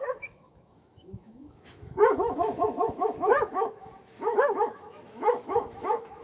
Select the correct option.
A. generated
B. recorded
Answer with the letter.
A